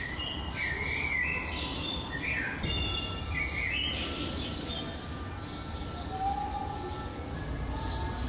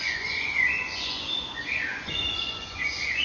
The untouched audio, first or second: first